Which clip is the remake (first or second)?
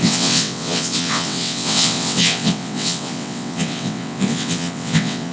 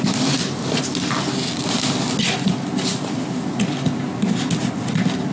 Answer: first